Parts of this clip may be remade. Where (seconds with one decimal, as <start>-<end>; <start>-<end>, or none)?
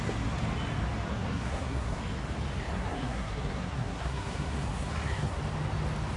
1.1-2.0; 2.7-5.4